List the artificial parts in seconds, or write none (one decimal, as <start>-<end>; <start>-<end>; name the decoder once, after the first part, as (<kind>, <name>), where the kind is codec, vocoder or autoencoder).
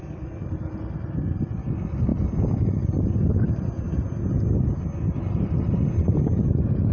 none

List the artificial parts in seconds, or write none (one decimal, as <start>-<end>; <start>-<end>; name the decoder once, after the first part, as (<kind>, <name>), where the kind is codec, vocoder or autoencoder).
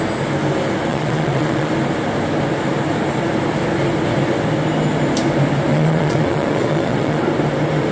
0.9-1.7 (vocoder, Vocos); 5.7-7.2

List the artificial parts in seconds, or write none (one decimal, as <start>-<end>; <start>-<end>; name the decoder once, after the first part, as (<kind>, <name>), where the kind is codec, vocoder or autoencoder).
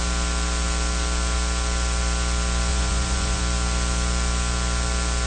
2.7-3.4 (vocoder, Vocos)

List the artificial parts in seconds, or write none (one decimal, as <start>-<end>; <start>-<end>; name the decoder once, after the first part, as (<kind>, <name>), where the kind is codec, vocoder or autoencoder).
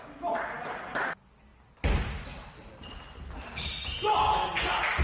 none